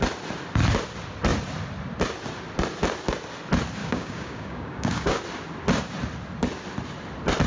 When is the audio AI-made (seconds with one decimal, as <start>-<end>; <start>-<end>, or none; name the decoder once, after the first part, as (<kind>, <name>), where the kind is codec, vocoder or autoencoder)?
3.8-5.2 (codec, DAC)

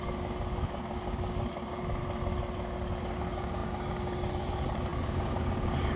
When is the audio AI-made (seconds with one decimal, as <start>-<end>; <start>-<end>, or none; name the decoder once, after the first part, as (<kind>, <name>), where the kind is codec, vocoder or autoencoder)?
0.0-2.0 (codec, DAC); 3.0-6.0

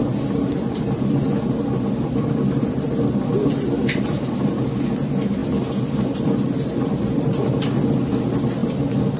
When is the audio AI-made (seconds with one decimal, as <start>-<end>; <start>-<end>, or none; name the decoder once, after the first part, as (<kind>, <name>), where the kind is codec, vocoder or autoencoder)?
none

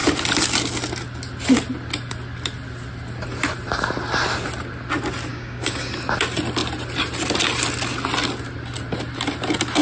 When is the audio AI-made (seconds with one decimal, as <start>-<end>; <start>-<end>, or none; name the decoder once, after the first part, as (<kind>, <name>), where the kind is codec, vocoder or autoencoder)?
5.3-5.9 (codec, DAC)

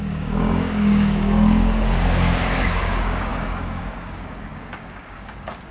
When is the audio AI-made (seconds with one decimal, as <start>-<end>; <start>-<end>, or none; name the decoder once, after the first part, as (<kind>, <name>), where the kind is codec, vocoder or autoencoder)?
0.0-5.7 (codec, DAC)